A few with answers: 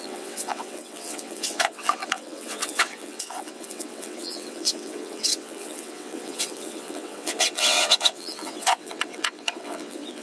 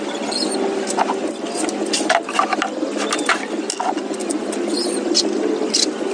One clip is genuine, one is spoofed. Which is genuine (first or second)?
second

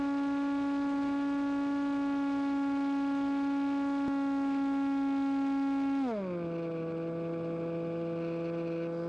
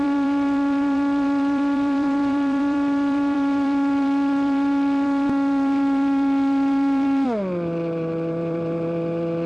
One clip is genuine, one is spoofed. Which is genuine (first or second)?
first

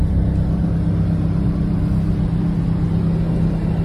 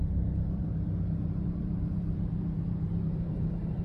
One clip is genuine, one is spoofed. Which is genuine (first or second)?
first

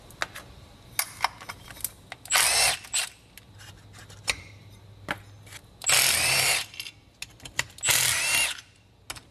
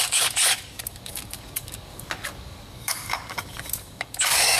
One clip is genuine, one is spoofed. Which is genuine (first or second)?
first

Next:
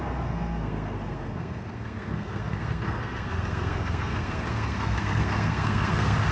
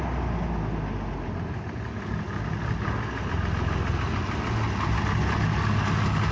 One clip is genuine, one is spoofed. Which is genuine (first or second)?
second